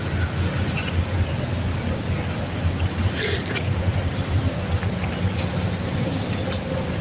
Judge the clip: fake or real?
real